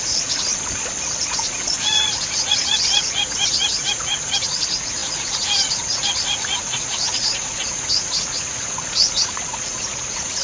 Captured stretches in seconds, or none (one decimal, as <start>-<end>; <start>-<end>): 0.5-1.2